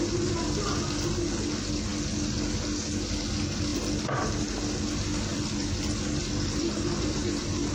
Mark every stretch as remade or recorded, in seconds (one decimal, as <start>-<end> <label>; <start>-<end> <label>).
0.0-5.3 recorded; 5.3-7.7 remade